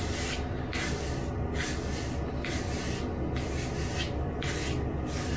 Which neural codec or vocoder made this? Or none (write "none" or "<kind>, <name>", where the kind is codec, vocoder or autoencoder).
none